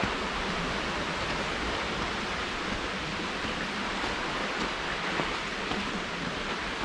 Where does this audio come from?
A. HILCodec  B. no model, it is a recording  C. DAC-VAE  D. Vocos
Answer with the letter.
B